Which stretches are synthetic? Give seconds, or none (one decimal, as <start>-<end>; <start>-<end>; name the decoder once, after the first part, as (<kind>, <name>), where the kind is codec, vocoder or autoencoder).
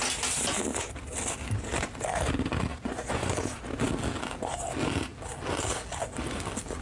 2.7-3.6 (vocoder, Vocos)